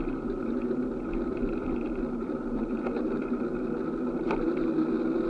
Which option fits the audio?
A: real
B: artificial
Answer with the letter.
A